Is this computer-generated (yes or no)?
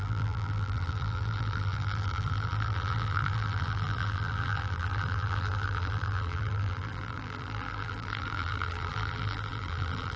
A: yes